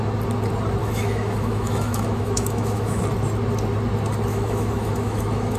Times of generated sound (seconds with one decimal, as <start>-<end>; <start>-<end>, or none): 0.8-3.0; 4.3-5.6